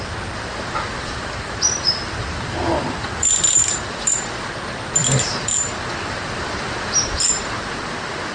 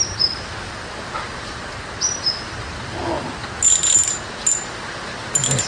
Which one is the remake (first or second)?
first